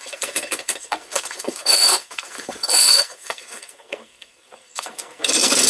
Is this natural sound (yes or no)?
no